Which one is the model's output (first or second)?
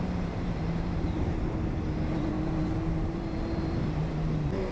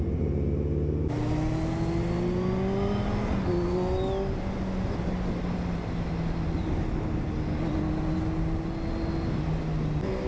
first